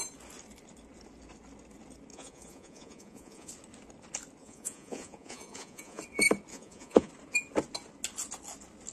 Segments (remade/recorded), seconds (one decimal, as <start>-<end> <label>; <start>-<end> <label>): 0.0-2.1 recorded; 2.1-3.5 remade; 3.5-4.4 recorded; 4.4-6.0 remade; 6.0-6.5 recorded; 6.5-7.1 remade; 7.1-8.9 recorded